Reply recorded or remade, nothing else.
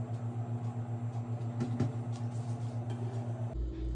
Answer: recorded